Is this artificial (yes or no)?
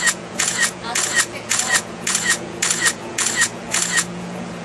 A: yes